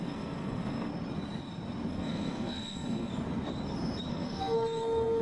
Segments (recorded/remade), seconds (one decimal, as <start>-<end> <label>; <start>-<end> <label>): 0.0-0.9 remade; 0.9-1.9 recorded; 1.9-3.1 remade; 3.1-4.1 recorded; 4.1-5.2 remade

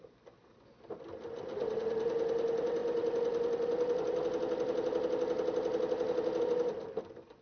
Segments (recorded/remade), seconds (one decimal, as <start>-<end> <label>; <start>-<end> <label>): 0.0-7.4 recorded

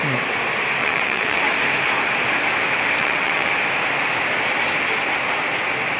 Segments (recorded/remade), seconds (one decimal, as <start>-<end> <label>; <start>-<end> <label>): 0.0-0.8 recorded; 0.8-1.4 remade; 1.4-3.0 recorded; 3.0-3.5 remade; 3.5-6.0 recorded